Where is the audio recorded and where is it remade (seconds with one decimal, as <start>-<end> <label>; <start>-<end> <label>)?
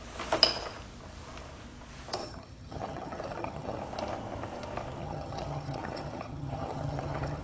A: 0.0-2.2 recorded; 2.2-3.8 remade; 3.8-5.0 recorded; 5.0-7.4 remade